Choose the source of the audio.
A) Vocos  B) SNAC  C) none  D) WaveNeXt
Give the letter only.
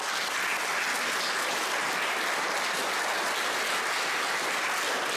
C